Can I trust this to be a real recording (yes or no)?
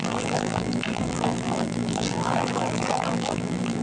no